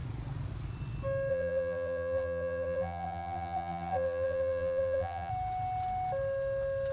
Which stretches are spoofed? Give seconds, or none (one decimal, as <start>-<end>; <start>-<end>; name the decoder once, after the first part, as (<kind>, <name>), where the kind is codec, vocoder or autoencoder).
1.3-5.3 (vocoder, BigVGAN v2)